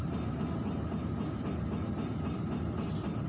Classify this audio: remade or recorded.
recorded